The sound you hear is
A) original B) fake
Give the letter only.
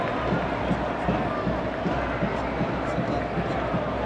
A